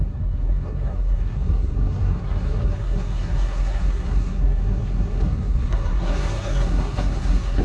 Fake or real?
fake